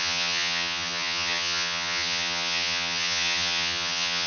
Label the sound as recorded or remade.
remade